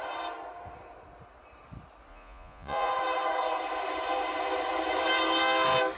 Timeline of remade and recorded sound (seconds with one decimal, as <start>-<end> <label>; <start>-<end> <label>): 0.0-2.1 recorded; 2.1-2.9 remade; 2.9-6.0 recorded